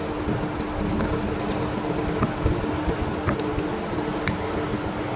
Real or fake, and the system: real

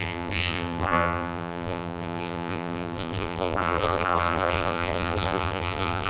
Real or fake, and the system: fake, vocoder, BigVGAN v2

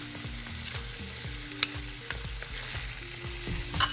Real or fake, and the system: real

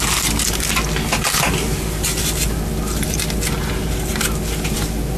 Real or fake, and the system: real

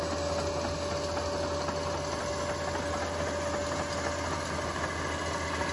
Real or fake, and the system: real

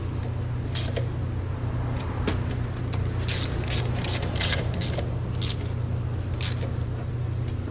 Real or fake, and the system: real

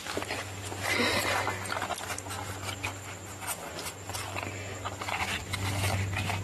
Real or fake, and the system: real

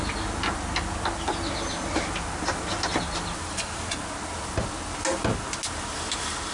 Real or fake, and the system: real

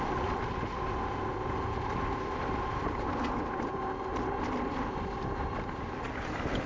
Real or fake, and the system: real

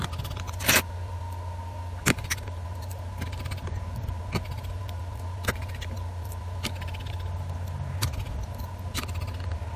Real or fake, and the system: real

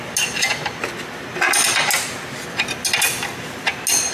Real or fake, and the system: real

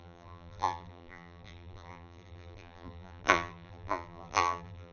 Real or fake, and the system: fake, vocoder, BigVGAN v2